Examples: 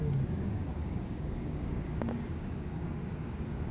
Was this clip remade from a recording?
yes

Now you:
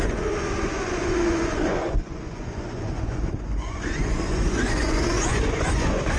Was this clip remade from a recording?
yes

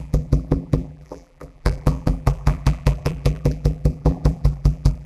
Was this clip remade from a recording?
yes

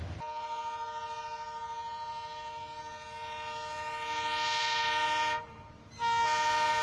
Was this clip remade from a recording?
no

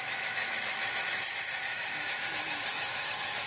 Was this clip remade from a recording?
yes